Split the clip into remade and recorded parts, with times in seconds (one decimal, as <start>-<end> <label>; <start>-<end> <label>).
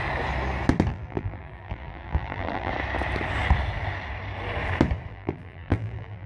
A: 0.0-0.9 recorded; 0.9-2.7 remade; 2.7-5.1 recorded; 5.1-6.3 remade